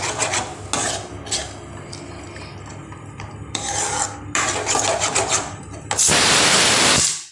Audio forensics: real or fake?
real